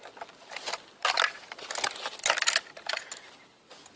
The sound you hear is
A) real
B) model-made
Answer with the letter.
A